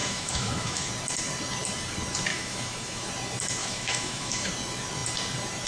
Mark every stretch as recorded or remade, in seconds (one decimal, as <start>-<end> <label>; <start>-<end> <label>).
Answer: 0.0-0.9 remade; 0.9-2.3 recorded; 2.3-3.1 remade; 3.1-3.6 recorded; 3.6-4.5 remade; 4.5-5.7 recorded